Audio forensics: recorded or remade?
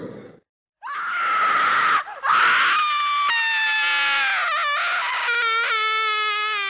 recorded